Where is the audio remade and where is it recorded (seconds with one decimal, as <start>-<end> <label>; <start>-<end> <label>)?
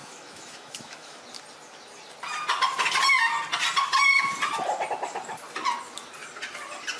0.0-1.2 remade; 1.2-7.0 recorded